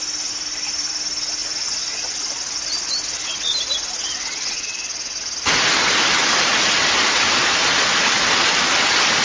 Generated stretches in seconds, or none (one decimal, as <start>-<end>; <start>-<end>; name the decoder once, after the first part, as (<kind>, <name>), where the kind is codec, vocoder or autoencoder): none